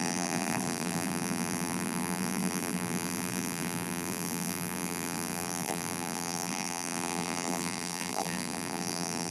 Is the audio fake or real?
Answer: fake